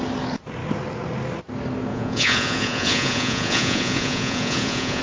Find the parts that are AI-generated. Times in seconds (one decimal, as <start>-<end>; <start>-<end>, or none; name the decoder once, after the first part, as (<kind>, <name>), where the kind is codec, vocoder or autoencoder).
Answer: 1.9-5.0 (vocoder, Vocos)